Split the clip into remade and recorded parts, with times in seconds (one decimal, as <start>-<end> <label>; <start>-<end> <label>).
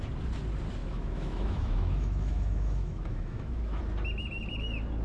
0.0-0.8 recorded; 0.8-3.8 remade; 3.8-5.0 recorded